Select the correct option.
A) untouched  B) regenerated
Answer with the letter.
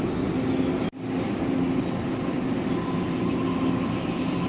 A